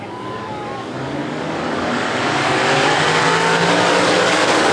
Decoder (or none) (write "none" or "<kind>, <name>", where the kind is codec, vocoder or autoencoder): codec, DAC